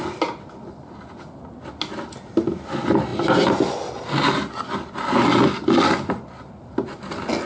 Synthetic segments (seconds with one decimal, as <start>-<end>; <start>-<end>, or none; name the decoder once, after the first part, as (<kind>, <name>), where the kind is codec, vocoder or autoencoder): none